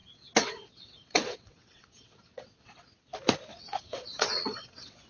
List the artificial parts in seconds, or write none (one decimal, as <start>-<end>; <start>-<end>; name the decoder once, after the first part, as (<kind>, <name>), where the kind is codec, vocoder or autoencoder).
0.0-3.1 (vocoder, WaveNeXt); 3.5-5.1

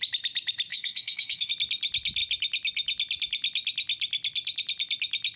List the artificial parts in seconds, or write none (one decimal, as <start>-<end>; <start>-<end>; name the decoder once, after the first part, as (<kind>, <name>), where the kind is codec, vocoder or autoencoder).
0.7-1.5 (codec, SNAC)

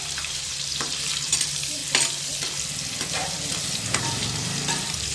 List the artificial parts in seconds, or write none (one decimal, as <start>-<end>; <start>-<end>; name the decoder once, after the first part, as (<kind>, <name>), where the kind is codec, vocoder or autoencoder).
0.0-1.8 (vocoder, BigVGAN v2); 3.6-5.1

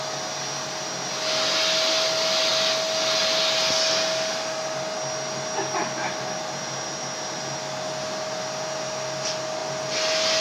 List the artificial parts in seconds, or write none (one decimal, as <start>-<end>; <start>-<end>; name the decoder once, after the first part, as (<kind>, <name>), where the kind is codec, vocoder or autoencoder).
none

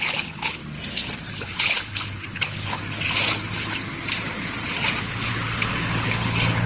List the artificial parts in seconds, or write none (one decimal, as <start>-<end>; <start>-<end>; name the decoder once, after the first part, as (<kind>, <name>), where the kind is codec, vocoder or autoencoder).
0.0-0.6 (codec, HILCodec); 1.3-2.8; 3.5-3.9; 5.0-6.7

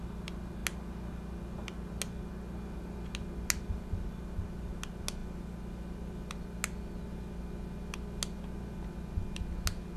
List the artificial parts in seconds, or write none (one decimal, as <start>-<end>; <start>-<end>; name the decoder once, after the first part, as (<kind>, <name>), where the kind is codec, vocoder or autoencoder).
none